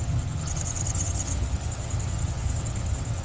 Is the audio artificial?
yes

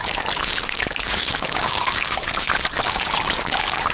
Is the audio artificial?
yes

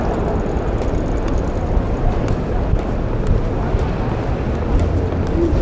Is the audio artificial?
no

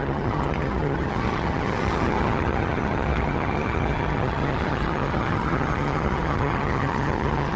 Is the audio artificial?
yes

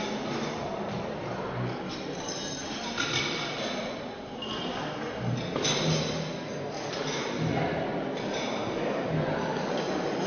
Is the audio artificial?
no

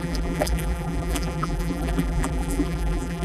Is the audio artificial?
yes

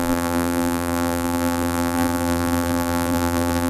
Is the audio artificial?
yes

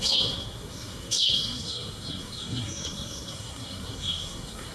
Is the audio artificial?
yes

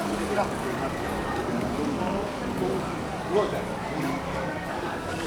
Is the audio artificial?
yes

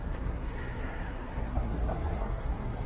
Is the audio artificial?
yes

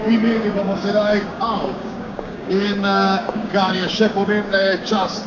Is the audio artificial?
yes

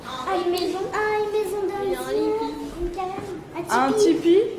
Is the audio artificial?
no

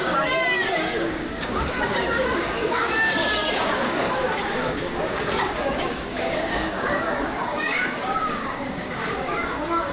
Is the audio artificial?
yes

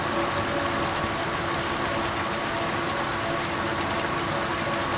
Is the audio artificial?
no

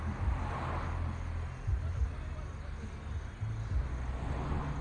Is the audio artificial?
no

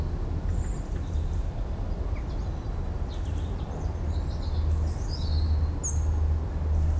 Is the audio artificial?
no